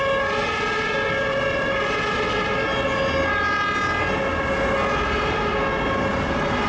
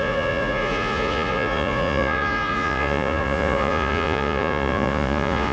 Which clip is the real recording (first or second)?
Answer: first